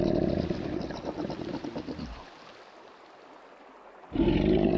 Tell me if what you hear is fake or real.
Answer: real